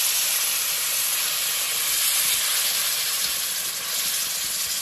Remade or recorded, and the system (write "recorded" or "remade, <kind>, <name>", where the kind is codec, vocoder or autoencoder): recorded